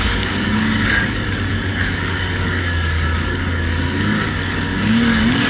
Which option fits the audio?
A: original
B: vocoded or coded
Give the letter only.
B